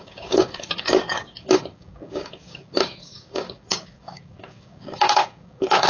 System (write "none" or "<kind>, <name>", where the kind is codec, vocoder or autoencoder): codec, DAC